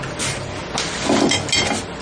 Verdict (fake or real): real